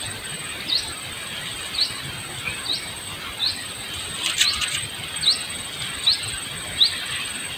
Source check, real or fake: real